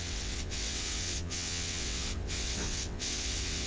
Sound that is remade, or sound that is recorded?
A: remade